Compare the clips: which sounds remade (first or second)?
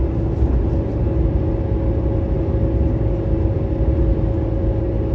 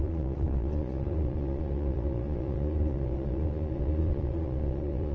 second